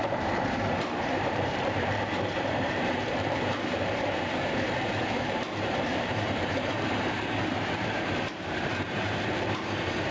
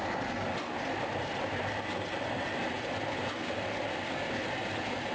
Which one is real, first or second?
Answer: second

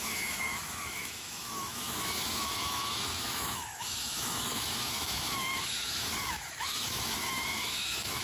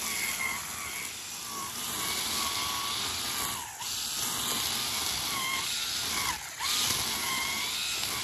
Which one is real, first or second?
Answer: second